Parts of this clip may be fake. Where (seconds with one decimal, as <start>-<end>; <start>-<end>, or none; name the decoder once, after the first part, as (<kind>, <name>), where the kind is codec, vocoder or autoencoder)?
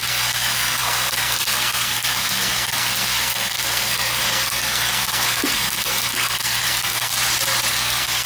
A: 0.0-7.1 (codec, SNAC); 7.7-8.3